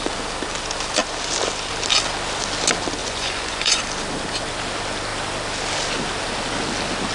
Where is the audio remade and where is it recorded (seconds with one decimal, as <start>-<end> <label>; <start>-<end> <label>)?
0.0-3.0 recorded; 3.0-3.8 remade; 3.8-7.1 recorded

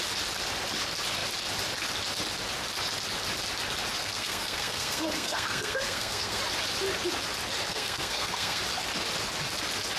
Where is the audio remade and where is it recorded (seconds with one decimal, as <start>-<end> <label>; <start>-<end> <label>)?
0.0-4.0 recorded; 4.0-6.4 remade; 6.4-7.7 recorded; 7.7-8.6 remade; 8.6-10.0 recorded